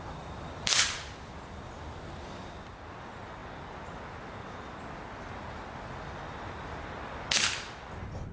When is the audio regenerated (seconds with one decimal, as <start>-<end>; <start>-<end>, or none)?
none